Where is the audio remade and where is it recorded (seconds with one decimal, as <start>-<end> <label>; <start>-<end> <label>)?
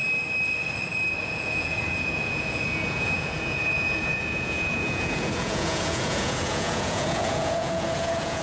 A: 0.0-1.2 recorded; 1.2-8.4 remade